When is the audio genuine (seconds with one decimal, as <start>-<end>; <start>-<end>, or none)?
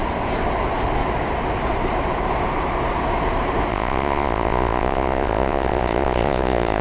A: 0.0-3.7